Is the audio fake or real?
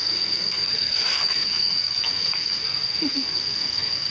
fake